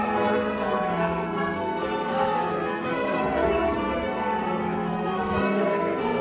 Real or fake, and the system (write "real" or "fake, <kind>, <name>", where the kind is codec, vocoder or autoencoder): fake, codec, SNAC